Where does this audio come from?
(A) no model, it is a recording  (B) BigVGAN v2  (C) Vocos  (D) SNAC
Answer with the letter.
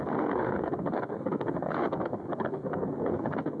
D